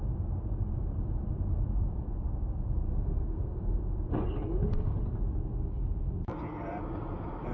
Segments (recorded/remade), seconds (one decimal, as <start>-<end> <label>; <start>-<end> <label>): 0.0-2.9 recorded; 2.9-3.8 remade; 3.8-7.5 recorded